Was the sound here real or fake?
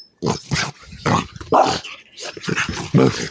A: real